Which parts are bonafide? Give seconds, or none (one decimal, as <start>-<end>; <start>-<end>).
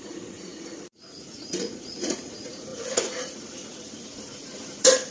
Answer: none